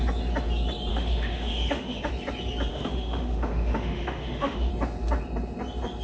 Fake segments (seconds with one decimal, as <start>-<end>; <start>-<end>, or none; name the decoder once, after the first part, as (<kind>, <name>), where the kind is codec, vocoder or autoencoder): 0.9-2.1 (autoencoder, DAC-VAE); 2.7-4.7